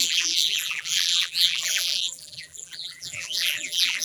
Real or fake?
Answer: fake